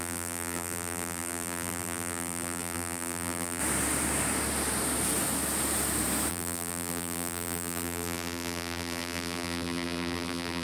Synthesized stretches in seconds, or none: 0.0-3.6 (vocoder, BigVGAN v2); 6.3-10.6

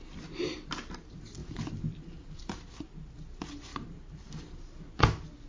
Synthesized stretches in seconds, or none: 1.4-2.5 (vocoder, BigVGAN v2); 3.7-4.9

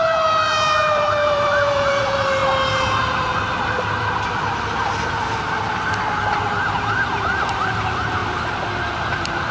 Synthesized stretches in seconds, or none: 0.0-2.4 (vocoder, BigVGAN v2); 6.6-8.2; 9.0-9.5

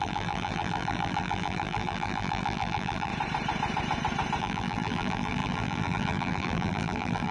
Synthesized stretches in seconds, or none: 0.0-3.1 (vocoder, BigVGAN v2); 4.4-7.3